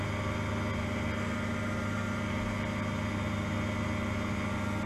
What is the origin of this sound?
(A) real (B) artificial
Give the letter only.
A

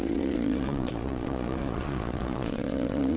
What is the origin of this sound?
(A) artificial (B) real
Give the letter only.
A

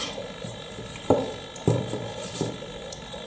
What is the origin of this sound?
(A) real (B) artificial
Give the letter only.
B